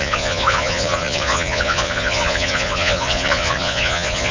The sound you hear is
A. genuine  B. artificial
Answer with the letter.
B